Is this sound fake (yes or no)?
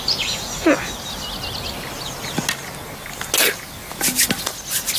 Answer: no